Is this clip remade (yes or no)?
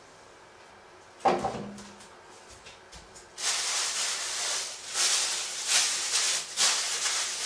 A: no